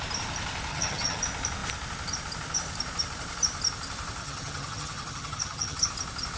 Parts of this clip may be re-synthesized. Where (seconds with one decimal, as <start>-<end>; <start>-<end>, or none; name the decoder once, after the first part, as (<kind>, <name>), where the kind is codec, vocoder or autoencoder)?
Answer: 0.7-1.2 (vocoder, HiFi-GAN); 4.2-5.9